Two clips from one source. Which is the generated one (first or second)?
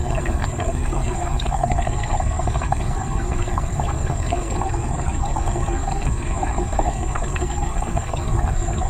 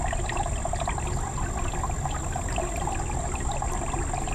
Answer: first